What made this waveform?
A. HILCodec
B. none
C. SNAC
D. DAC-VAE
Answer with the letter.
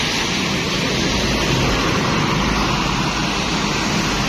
B